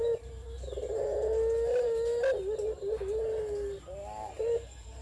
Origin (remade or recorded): recorded